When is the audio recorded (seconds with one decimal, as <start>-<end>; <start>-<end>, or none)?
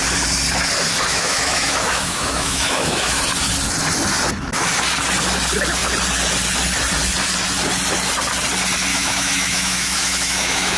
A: 0.0-1.1; 3.2-8.9